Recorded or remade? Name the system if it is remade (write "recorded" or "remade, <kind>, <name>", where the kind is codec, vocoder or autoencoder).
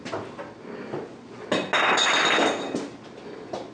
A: recorded